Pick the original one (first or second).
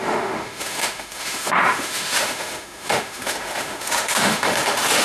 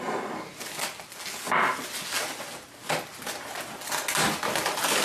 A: second